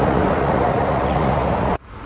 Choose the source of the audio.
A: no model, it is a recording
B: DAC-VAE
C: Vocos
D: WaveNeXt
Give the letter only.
C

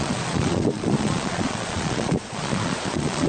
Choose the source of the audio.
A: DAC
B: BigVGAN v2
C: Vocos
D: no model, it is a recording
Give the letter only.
C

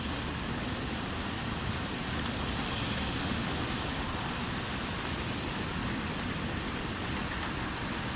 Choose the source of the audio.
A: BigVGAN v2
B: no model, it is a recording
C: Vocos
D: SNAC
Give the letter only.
B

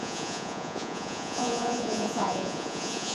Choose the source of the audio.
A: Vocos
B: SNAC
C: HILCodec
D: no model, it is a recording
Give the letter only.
A